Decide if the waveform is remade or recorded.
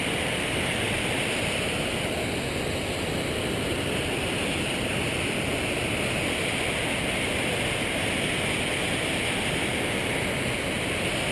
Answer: recorded